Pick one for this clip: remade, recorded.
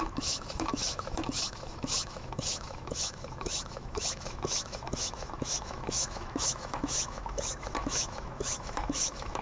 remade